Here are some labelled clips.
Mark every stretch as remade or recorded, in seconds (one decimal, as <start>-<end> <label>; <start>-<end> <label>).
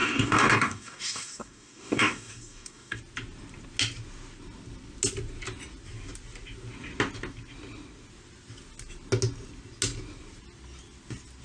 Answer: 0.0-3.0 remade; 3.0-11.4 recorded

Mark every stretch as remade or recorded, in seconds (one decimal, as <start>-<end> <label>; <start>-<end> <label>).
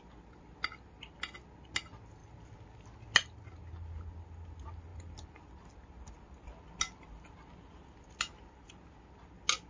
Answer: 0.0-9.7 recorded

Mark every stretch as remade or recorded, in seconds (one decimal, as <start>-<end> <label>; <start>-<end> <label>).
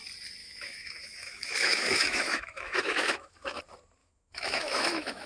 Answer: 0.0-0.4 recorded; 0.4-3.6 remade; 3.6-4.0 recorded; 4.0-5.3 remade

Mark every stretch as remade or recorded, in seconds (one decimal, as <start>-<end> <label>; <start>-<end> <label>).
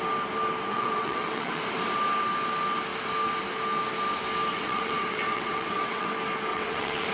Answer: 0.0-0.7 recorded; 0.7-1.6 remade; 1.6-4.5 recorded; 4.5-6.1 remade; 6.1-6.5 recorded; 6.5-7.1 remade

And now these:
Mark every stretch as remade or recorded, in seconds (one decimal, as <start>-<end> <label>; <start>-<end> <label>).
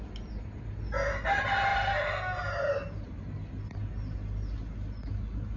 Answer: 0.0-5.6 recorded